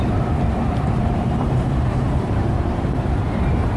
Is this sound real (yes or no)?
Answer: no